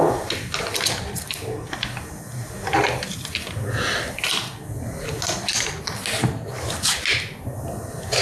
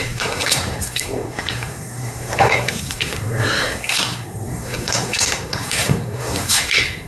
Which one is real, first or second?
first